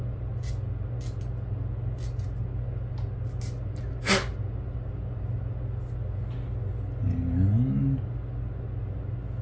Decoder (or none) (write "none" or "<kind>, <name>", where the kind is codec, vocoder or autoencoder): none